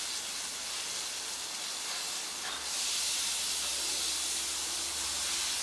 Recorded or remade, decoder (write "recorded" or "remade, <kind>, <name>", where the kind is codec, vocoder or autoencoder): recorded